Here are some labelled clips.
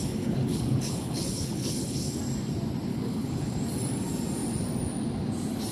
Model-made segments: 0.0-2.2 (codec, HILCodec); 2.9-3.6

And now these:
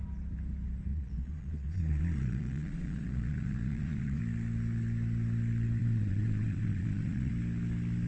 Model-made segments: 0.9-4.2 (vocoder, Vocos); 5.8-7.3

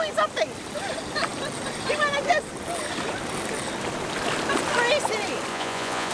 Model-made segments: 5.5-6.1 (vocoder, Vocos)

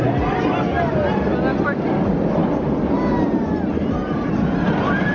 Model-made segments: none

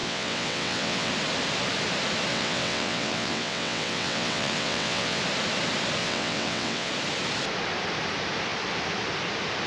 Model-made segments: 0.0-1.1 (vocoder, WaveNeXt); 2.3-5.2; 6.0-6.9

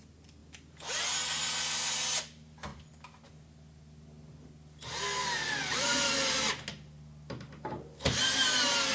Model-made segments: 5.7-6.5 (vocoder, BigVGAN v2)

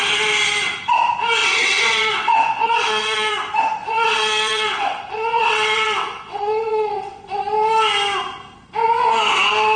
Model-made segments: 1.4-3.3 (vocoder, WaveNeXt); 3.8-7.4

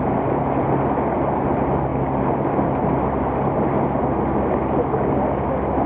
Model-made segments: none